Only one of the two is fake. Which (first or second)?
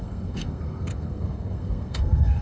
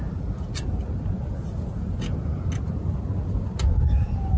first